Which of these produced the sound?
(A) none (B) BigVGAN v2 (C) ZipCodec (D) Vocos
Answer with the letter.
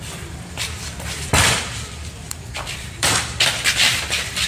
B